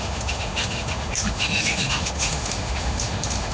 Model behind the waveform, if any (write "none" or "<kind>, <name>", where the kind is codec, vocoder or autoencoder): autoencoder, DAC-VAE